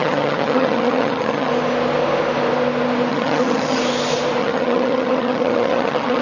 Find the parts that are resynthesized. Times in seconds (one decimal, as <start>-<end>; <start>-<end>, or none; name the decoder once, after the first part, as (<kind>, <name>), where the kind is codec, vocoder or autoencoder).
0.0-1.5 (vocoder, HiFi-GAN); 3.1-3.8; 4.4-6.2